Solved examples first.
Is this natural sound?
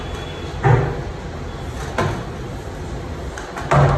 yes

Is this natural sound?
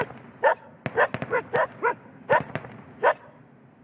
yes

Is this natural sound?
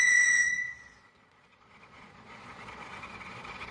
no